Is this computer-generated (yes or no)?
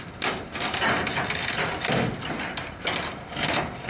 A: no